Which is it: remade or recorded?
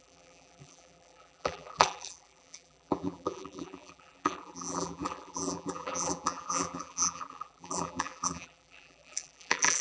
remade